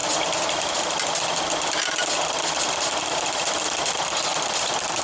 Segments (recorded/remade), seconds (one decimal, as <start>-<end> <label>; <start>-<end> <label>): 0.0-5.0 recorded